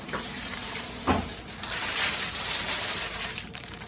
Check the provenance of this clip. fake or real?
fake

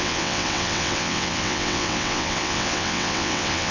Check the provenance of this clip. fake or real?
fake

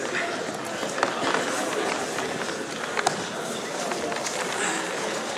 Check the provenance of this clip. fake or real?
real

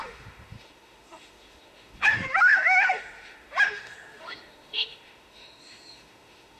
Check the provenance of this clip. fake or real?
fake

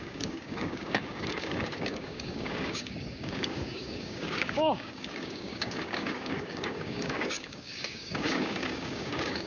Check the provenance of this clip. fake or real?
fake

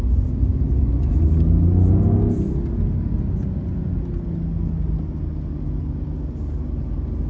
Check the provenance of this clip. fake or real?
real